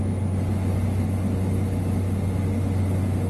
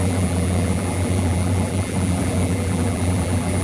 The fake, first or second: second